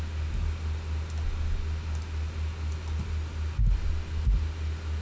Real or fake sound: real